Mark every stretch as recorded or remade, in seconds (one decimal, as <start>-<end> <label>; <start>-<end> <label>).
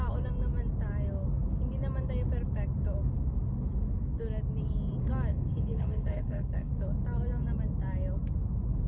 0.0-5.3 recorded; 5.3-6.7 remade; 6.7-8.9 recorded